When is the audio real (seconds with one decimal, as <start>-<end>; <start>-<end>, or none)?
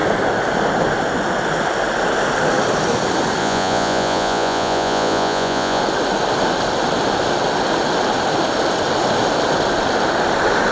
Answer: 0.0-3.4; 5.8-10.7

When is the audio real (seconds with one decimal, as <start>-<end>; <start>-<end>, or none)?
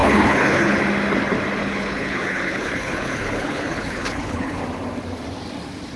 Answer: 0.8-1.6; 4.6-6.0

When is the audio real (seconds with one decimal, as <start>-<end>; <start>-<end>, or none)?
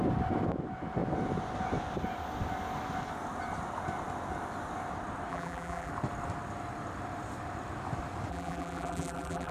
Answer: 0.0-5.3; 5.9-8.3